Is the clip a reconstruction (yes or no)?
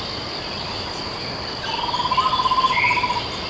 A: no